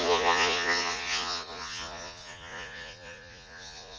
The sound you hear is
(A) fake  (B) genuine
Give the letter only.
A